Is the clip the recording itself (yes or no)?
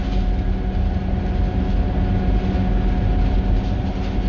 yes